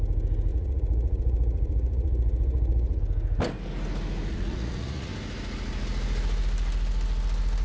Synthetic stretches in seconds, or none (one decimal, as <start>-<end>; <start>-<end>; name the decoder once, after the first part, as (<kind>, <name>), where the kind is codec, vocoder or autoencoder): 0.5-3.0 (vocoder, Vocos); 4.3-5.1